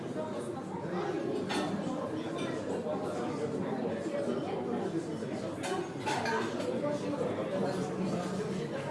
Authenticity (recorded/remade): recorded